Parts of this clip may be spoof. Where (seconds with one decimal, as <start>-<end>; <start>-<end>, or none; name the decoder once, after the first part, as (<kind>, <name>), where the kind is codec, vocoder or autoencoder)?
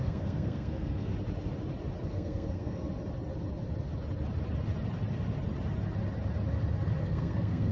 0.0-1.1 (codec, SNAC); 2.1-2.8; 7.0-7.7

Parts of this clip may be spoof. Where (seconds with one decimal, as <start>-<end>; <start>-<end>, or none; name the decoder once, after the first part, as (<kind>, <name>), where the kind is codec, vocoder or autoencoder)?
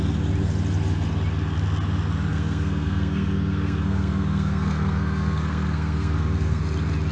2.3-6.6 (codec, SNAC)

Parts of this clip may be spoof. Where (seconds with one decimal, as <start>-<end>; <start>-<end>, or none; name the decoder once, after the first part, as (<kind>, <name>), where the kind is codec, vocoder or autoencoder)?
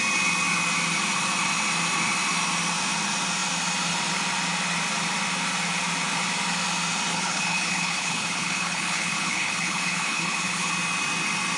7.1-10.7 (codec, HILCodec)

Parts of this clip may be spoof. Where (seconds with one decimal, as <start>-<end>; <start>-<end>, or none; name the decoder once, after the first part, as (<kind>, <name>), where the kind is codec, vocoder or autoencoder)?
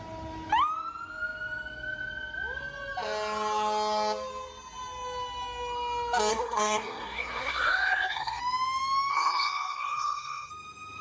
6.3-8.4 (codec, SNAC); 9.1-10.5